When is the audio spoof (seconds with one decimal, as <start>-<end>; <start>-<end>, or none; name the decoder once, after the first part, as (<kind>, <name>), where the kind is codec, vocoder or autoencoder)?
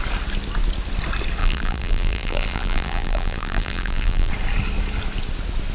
1.4-4.3 (vocoder, BigVGAN v2)